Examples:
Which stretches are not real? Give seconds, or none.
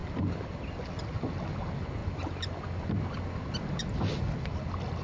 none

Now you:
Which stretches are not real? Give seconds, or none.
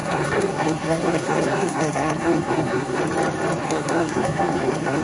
0.0-3.0 (codec, SNAC); 3.6-5.0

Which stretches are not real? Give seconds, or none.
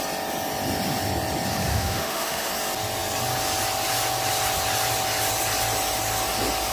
1.7-2.5 (autoencoder, DAC-VAE)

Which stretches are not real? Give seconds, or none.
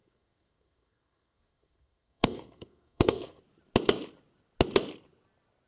0.0-3.4 (codec, SNAC)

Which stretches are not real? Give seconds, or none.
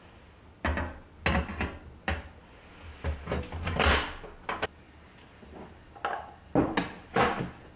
none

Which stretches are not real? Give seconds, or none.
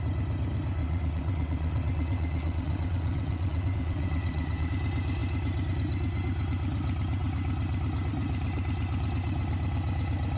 0.8-4.7 (vocoder, WaveNeXt)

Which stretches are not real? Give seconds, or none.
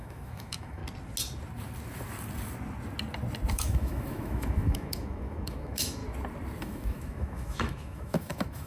0.0-0.8 (autoencoder, DAC-VAE); 3.5-6.0; 6.6-8.7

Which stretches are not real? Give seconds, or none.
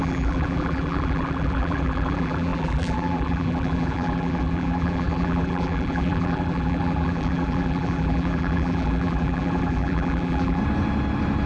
0.0-10.6 (vocoder, BigVGAN v2)